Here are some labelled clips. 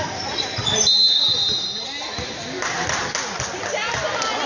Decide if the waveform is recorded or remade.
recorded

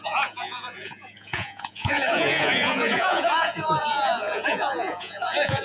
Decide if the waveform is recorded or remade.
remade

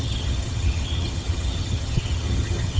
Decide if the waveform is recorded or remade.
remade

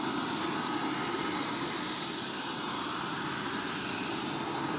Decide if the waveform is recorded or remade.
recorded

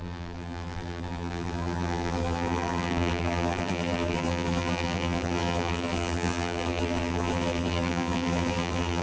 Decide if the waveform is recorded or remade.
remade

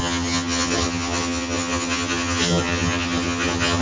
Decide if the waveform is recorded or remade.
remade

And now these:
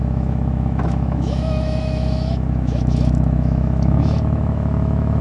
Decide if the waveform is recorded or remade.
remade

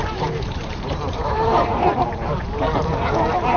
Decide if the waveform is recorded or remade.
remade